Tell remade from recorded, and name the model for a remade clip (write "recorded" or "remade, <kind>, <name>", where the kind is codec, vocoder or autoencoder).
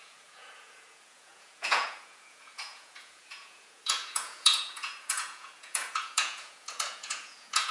remade, vocoder, Vocos